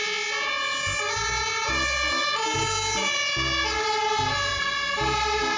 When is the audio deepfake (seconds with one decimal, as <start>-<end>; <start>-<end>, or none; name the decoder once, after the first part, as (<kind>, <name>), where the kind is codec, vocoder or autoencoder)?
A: none